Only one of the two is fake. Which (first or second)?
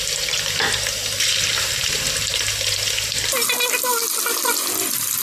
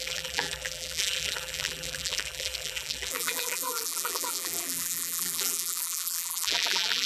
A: second